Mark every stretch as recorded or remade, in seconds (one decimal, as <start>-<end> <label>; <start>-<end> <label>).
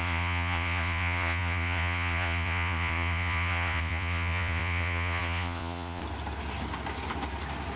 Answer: 0.0-6.0 remade; 6.0-7.8 recorded